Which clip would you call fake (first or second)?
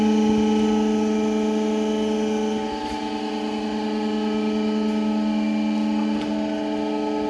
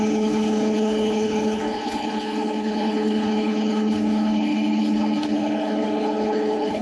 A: second